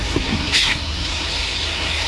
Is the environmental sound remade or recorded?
remade